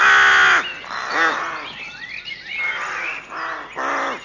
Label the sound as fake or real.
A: real